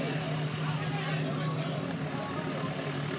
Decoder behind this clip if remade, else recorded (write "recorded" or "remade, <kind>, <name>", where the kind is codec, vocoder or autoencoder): recorded